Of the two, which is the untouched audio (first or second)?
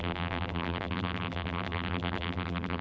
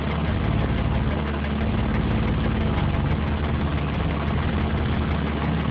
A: second